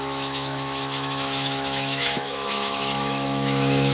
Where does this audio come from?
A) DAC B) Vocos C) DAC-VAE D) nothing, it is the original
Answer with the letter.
C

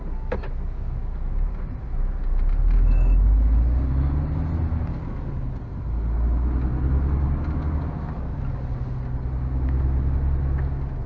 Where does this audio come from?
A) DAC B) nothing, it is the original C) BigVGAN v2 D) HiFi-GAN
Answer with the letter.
B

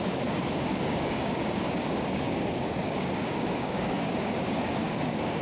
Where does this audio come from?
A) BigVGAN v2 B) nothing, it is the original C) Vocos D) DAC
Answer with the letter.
D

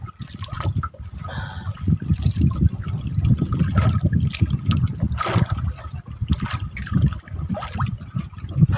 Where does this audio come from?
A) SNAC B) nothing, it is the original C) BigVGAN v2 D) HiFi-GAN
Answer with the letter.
B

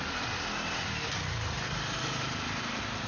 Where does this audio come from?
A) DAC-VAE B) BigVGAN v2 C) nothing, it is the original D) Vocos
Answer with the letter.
C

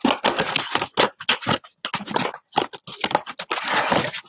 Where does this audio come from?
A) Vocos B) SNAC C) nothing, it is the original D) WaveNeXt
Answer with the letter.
C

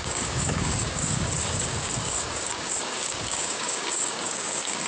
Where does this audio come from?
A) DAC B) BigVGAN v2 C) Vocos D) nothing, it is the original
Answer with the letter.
A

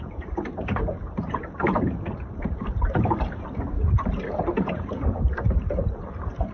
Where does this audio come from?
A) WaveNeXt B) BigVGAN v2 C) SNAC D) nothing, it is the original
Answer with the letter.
B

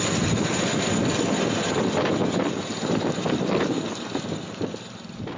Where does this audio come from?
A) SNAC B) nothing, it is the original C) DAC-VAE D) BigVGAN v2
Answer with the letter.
B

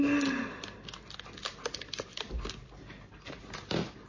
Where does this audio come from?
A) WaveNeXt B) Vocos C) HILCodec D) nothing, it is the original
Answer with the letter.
D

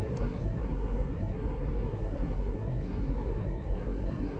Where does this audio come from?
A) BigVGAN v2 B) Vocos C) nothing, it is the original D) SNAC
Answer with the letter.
D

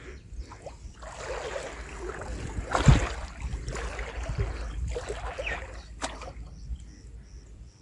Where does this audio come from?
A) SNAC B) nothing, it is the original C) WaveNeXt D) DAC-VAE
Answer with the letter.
B